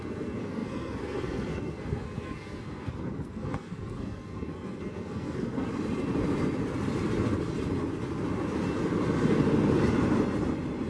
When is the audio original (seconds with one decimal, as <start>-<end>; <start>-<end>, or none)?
5.7-10.9